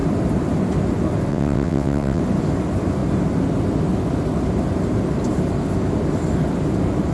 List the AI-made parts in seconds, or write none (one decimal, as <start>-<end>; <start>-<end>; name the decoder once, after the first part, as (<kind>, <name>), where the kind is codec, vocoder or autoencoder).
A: 1.3-2.2 (vocoder, WaveNeXt)